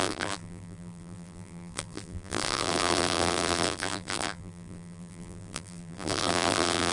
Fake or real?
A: fake